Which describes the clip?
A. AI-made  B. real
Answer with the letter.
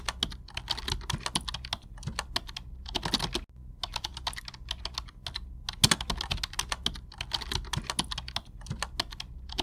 B